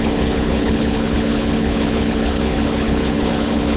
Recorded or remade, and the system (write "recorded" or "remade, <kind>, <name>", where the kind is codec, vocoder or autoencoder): remade, codec, HILCodec